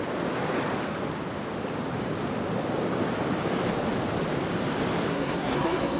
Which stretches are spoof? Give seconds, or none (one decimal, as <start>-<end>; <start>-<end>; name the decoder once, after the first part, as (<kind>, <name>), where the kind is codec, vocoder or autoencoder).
5.1-6.0 (codec, SNAC)